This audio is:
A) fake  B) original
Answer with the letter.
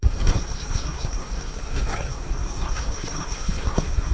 A